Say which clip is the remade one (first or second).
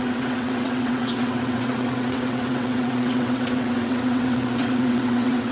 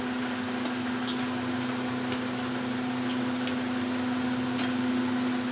first